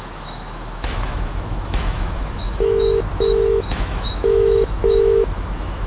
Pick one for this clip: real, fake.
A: fake